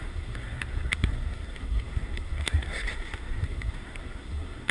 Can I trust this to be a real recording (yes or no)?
no